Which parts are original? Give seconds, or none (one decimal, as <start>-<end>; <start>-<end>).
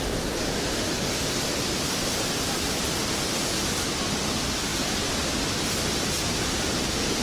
0.0-7.2